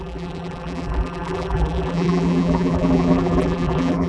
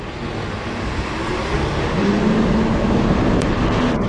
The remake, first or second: first